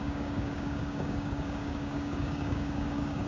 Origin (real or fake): fake